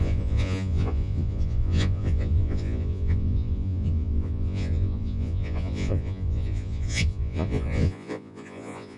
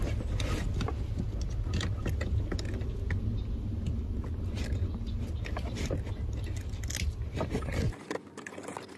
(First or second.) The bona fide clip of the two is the second